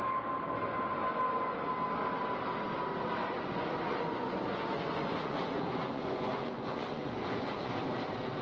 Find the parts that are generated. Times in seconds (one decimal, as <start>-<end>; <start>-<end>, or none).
3.2-7.7